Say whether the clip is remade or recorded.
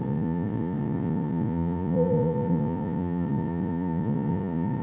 remade